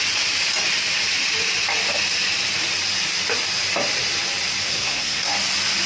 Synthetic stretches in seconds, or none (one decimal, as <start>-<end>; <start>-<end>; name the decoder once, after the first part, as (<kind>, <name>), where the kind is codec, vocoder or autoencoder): 4.7-5.3 (codec, SNAC)